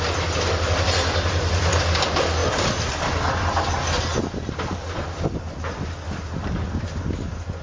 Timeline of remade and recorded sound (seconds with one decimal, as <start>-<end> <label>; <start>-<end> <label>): 0.0-7.6 recorded